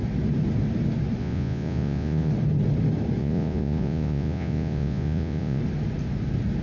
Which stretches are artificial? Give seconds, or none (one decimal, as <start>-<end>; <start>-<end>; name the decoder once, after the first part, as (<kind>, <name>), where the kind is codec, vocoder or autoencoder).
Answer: 1.2-2.3 (vocoder, Vocos); 3.2-5.6